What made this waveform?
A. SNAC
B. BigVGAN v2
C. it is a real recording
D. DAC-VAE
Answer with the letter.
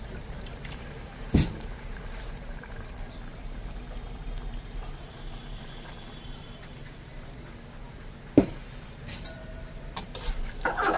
B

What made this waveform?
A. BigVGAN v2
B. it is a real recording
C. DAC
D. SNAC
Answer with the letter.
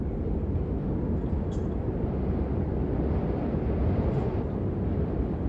A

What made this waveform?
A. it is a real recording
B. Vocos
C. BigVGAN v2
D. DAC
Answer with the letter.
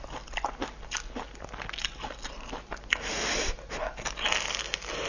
A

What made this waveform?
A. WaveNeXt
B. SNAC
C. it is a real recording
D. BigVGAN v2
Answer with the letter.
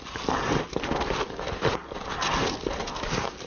C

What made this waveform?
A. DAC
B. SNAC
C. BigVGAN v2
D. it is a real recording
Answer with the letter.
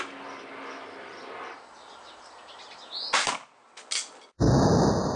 D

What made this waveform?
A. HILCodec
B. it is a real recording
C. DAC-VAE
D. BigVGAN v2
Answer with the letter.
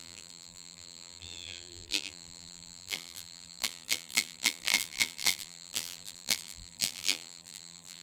D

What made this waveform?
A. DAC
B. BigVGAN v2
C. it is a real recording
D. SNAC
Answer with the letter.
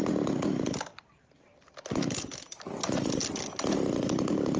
C